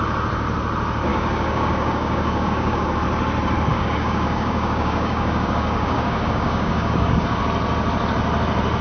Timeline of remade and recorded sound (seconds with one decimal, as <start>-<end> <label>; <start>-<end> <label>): 0.0-1.1 recorded; 1.1-2.9 remade; 2.9-3.7 recorded; 3.7-7.4 remade; 7.4-8.8 recorded